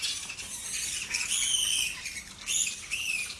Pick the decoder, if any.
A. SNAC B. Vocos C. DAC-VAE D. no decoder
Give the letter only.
D